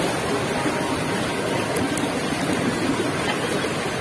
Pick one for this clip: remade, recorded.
recorded